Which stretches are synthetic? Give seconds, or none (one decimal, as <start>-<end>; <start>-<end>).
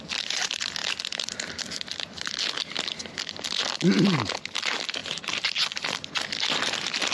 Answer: 0.0-5.0; 6.5-7.1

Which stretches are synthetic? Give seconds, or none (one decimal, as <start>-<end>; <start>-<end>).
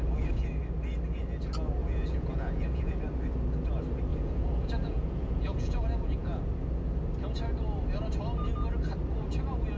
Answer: 1.8-3.0; 4.1-6.4